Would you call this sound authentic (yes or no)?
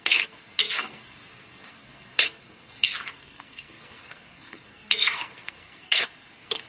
no